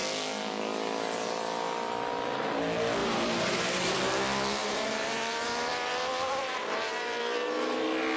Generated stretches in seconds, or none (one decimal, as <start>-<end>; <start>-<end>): 3.0-4.0; 4.6-7.2